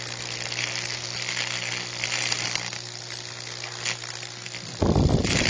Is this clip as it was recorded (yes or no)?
no